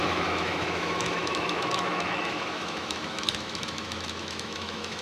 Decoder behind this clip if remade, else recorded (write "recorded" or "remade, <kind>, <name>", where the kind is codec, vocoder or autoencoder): remade, autoencoder, DAC-VAE